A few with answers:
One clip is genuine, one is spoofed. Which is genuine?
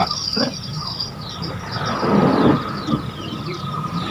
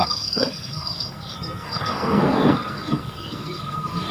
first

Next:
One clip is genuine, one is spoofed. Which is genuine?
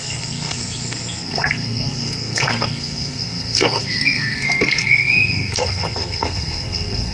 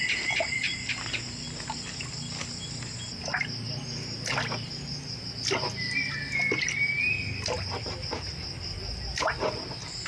second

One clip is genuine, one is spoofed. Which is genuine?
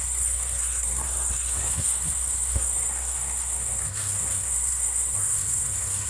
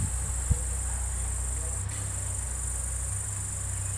second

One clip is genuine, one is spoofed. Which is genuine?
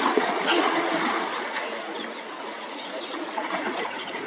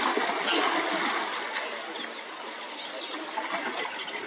second